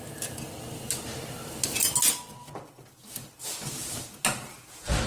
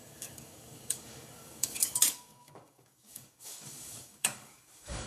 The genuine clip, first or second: first